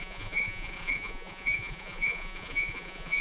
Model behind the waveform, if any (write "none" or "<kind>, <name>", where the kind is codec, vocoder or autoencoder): vocoder, Vocos